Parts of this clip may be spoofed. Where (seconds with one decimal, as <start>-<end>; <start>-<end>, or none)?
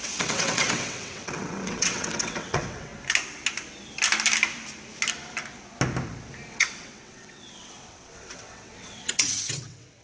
0.0-2.9; 6.5-10.0